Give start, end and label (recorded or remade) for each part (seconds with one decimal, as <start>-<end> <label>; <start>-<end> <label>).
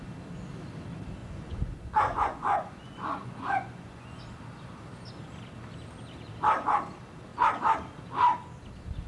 0.0-1.2 recorded; 1.2-4.2 remade; 4.2-9.1 recorded